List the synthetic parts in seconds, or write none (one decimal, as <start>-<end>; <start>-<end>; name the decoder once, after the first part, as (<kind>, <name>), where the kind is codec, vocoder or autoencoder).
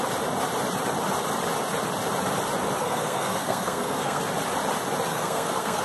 2.8-4.2 (codec, SNAC); 5.1-5.8